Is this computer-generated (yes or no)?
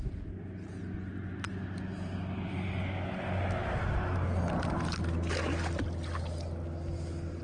no